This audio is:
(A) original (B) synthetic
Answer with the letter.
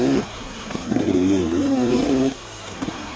B